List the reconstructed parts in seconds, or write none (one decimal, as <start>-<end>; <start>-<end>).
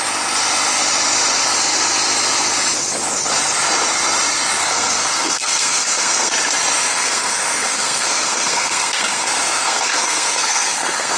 4.6-6.3; 6.9-11.2